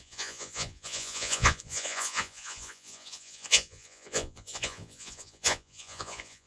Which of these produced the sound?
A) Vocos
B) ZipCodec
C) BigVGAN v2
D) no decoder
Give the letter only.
A